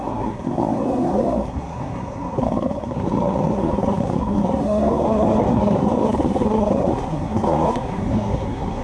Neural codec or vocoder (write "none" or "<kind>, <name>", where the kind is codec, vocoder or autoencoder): codec, SNAC